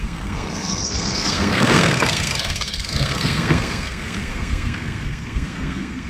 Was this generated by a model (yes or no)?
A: yes